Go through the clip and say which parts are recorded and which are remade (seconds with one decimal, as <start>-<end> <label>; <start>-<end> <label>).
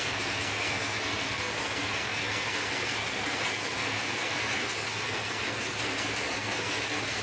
0.0-7.2 remade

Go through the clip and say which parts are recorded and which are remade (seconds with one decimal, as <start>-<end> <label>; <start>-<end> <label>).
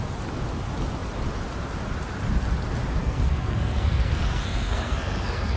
0.0-3.0 recorded; 3.0-5.6 remade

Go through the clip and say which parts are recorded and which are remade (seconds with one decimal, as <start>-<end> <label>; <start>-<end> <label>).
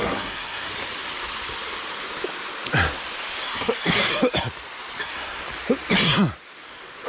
0.0-0.7 remade; 0.7-3.4 recorded; 3.4-4.1 remade; 4.1-5.0 recorded; 5.0-5.4 remade; 5.4-7.1 recorded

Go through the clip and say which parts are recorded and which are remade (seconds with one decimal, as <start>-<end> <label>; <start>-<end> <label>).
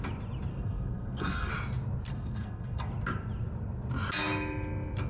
0.0-0.5 recorded; 0.5-1.5 remade; 1.5-2.1 recorded; 2.1-2.9 remade; 2.9-5.1 recorded